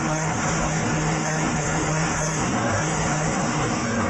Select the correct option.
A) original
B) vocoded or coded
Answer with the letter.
B